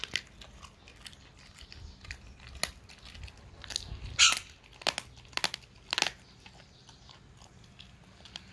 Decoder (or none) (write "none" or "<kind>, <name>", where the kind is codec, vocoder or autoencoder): none